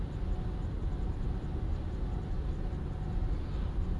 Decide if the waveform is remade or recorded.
recorded